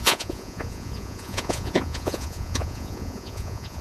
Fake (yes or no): yes